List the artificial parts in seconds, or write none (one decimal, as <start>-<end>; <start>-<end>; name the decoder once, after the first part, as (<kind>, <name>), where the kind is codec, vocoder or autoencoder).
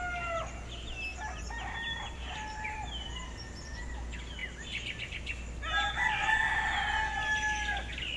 1.1-3.8 (vocoder, BigVGAN v2)